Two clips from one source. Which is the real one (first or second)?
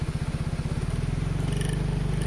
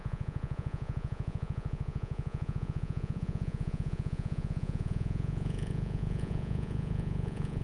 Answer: first